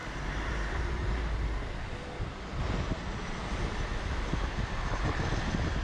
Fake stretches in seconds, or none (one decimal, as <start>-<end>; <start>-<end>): 0.0-1.1